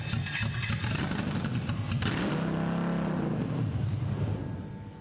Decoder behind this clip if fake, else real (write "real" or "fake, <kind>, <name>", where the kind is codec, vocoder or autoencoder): real